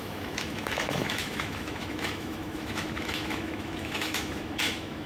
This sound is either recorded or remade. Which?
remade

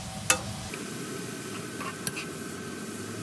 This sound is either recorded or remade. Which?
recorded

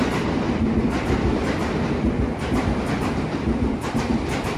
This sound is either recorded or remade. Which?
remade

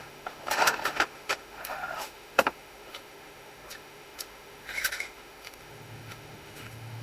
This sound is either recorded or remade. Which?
remade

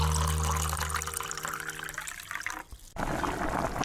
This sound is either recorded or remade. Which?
recorded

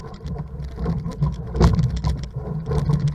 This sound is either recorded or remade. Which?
recorded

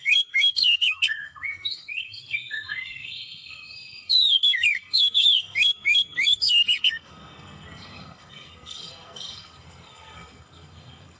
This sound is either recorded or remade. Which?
remade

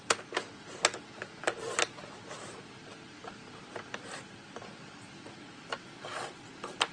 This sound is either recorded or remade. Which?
recorded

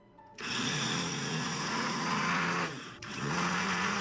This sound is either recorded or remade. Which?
remade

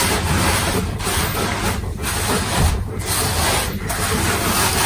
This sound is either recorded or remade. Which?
recorded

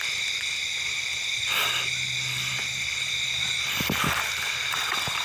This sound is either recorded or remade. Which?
recorded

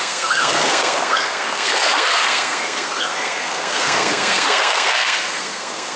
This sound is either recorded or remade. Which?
remade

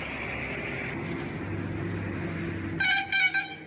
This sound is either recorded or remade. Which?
recorded